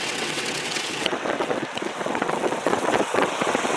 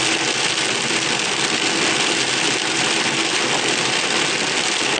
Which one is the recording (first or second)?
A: second